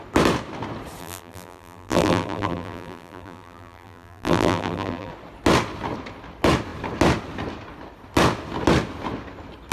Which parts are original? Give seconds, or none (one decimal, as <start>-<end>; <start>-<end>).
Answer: 0.0-1.0; 5.1-9.7